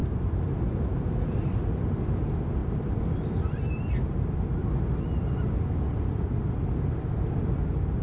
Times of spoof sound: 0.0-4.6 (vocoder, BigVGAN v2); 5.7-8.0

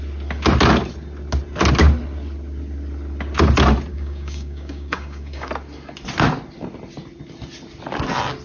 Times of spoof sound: 3.9-5.5 (codec, DAC)

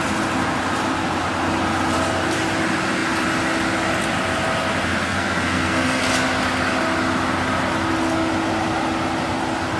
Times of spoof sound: 5.0-6.0 (codec, SNAC)

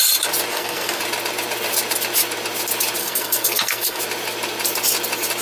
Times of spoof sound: 0.5-1.0 (codec, SNAC); 3.0-4.0

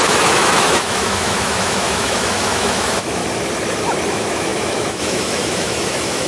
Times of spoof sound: 0.0-3.2 (autoencoder, DAC-VAE); 4.1-6.3

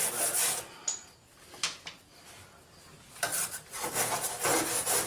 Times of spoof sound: none

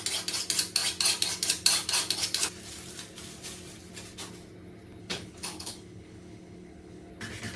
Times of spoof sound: 5.0-7.1 (codec, HILCodec)